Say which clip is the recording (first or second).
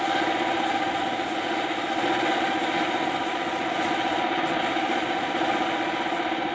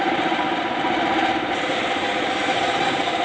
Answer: first